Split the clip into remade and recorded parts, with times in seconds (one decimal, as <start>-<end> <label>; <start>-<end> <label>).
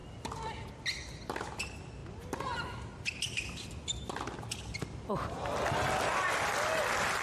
0.0-7.2 recorded